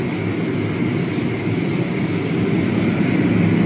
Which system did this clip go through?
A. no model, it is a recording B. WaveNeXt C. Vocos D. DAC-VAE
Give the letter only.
A